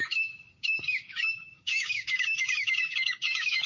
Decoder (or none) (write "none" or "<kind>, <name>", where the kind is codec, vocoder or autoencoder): codec, DAC